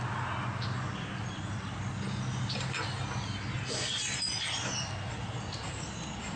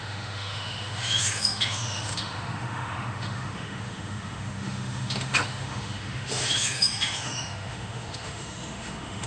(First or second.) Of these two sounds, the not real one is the second